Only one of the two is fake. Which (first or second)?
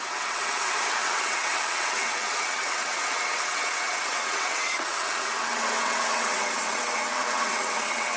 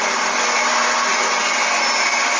first